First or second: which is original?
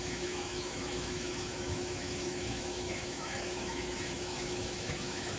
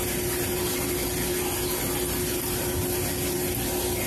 second